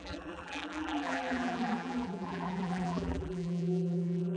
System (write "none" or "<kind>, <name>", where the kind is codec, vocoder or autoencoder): vocoder, BigVGAN v2